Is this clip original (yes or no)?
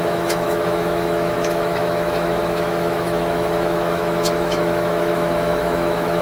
no